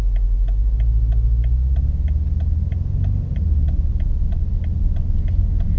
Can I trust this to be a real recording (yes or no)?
yes